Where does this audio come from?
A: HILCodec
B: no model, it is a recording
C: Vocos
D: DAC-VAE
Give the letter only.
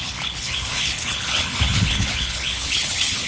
A